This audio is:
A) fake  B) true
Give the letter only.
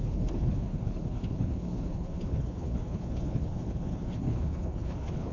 A